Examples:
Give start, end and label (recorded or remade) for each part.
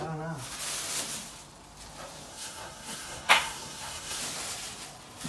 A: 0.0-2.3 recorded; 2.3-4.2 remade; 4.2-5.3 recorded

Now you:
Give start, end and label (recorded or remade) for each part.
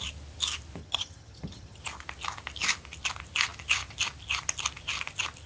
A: 0.0-0.8 recorded; 0.8-1.8 remade; 1.8-5.5 recorded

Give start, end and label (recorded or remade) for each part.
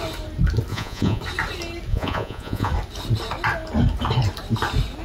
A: 0.0-0.7 recorded; 0.7-1.2 remade; 1.2-1.9 recorded; 1.9-2.7 remade; 2.7-5.0 recorded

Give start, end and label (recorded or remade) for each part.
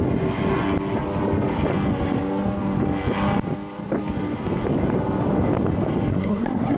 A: 0.0-6.1 recorded; 6.1-6.8 remade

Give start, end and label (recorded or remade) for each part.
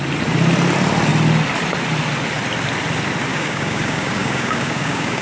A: 0.0-3.3 recorded; 3.3-5.2 remade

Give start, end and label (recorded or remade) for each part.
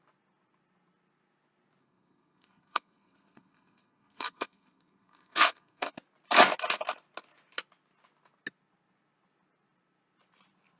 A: 0.0-1.8 recorded; 1.8-5.9 remade; 5.9-10.8 recorded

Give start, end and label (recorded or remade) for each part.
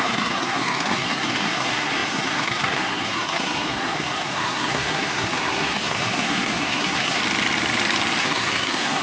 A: 0.0-7.2 remade; 7.2-8.2 recorded; 8.2-9.0 remade